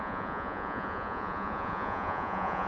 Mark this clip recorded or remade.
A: remade